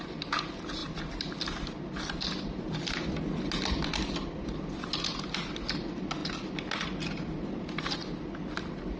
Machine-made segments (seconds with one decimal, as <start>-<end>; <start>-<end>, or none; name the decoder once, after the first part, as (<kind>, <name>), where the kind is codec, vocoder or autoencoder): none